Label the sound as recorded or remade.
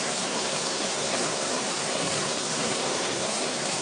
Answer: remade